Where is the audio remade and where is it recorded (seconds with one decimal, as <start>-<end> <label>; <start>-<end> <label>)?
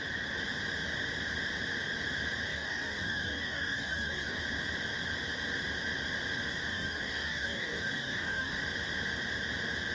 0.0-2.5 recorded; 2.5-4.4 remade; 4.4-6.7 recorded; 6.7-8.6 remade; 8.6-9.9 recorded